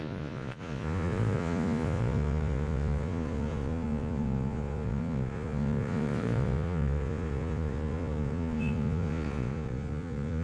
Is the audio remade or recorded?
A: remade